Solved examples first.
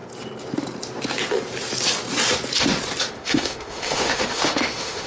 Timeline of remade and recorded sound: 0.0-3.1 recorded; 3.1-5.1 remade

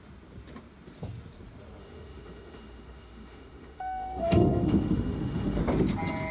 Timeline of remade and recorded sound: 0.0-1.8 recorded; 1.8-5.6 remade; 5.6-6.3 recorded

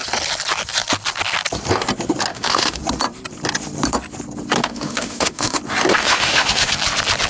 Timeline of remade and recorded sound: 0.0-2.3 recorded; 2.3-2.8 remade; 2.8-4.6 recorded; 4.6-5.6 remade; 5.6-6.0 recorded; 6.0-6.7 remade; 6.7-7.3 recorded

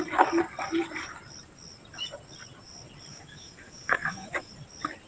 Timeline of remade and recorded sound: 0.0-3.1 recorded; 3.1-4.5 remade; 4.5-5.1 recorded